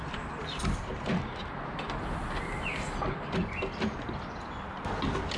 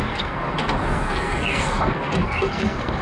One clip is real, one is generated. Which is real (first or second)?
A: first